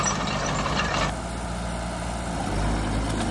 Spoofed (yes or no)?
no